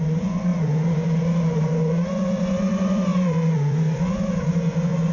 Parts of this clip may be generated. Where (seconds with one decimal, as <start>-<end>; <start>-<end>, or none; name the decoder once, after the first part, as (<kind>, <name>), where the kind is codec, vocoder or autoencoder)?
0.0-5.1 (vocoder, Vocos)